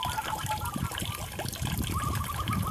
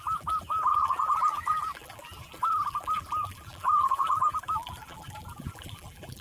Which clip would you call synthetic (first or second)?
second